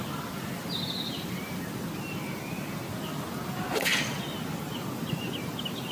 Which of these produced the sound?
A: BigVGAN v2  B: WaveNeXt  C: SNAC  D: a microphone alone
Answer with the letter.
D